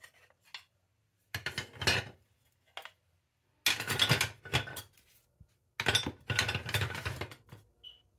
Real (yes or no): yes